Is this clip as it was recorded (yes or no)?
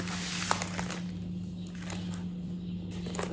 yes